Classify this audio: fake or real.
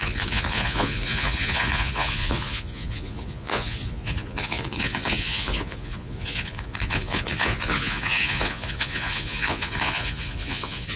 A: fake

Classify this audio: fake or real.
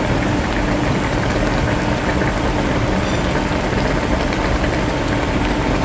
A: real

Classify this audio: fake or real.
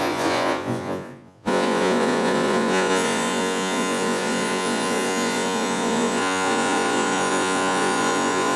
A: fake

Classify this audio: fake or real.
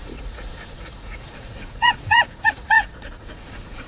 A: fake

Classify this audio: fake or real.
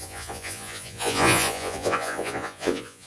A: fake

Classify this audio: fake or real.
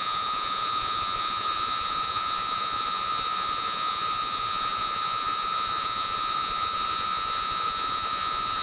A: fake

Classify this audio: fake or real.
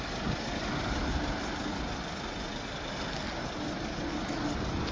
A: real